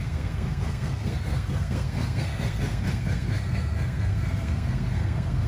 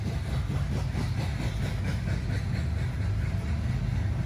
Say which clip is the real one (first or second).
second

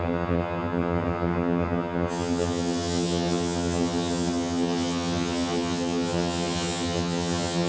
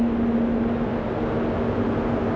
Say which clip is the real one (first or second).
second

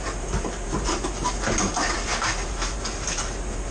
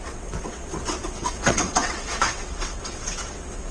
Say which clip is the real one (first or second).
first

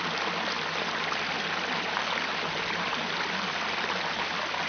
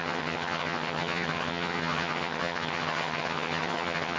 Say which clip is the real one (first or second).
first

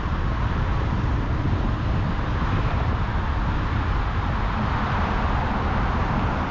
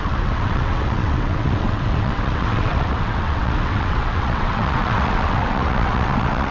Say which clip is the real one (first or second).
first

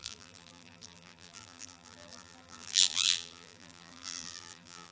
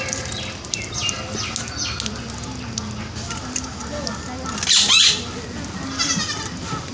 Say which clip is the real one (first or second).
second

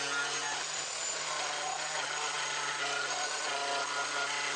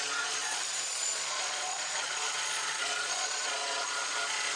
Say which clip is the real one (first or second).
first